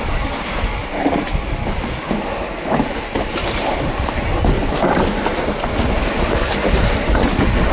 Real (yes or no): yes